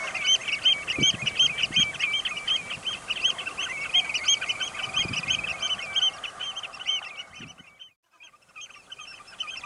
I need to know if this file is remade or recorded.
recorded